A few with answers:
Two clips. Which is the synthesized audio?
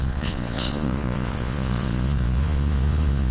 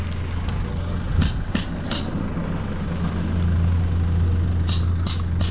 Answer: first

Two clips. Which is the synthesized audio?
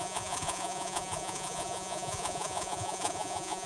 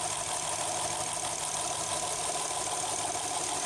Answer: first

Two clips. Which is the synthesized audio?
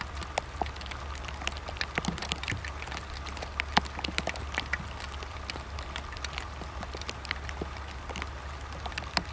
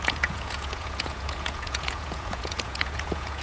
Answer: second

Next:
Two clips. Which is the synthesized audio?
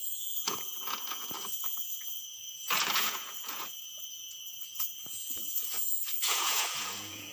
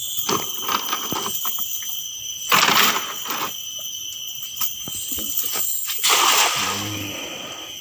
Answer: first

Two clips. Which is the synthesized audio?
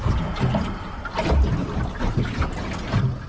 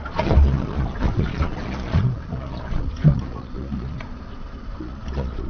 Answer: second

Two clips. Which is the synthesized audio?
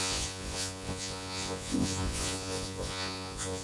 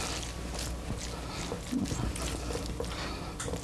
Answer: first